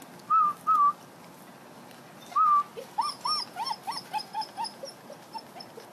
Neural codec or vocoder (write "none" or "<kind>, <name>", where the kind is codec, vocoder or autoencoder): none